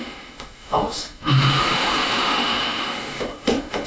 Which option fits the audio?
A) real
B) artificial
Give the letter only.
B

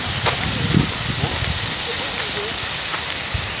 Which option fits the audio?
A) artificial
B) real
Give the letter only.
A